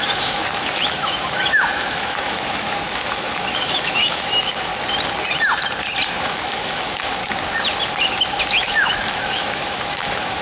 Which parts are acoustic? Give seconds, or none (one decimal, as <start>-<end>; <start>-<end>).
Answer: 4.7-6.2; 7.2-8.4